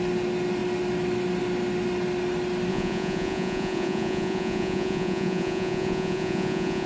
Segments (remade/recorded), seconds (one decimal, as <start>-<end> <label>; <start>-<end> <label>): 0.0-2.7 recorded; 2.7-6.9 remade